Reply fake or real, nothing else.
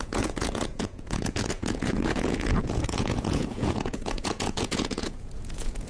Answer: fake